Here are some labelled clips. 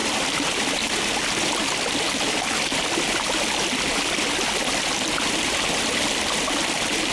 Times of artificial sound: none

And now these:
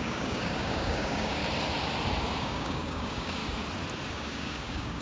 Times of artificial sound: 0.0-1.4 (codec, DAC); 2.4-3.4; 4.1-5.0

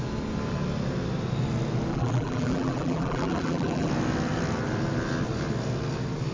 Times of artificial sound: 1.9-3.9 (vocoder, BigVGAN v2)

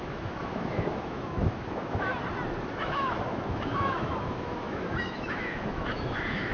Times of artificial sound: 0.0-2.1 (autoencoder, DAC-VAE); 2.7-6.5